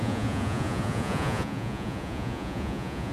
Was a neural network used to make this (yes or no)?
yes